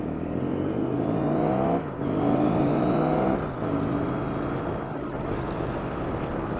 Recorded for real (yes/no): yes